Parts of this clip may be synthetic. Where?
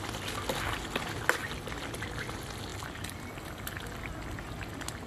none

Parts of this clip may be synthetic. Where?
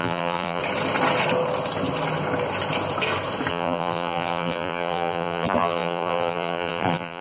0.0-0.6 (vocoder, BigVGAN v2); 3.5-7.2